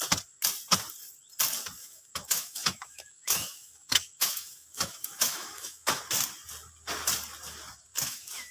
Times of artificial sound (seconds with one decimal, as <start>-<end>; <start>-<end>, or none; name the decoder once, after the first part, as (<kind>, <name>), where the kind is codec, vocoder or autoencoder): 1.8-6.0 (autoencoder, DAC-VAE); 7.9-8.5